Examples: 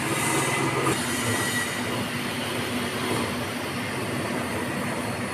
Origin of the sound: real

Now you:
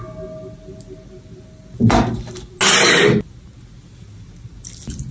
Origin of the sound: real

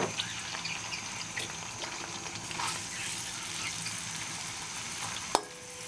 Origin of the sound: real